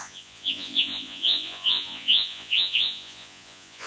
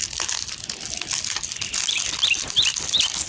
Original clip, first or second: second